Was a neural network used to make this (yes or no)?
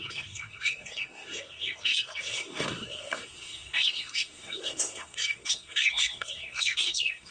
yes